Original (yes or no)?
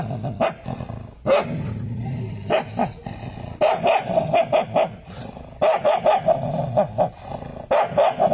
yes